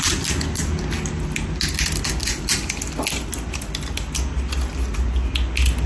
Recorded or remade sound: recorded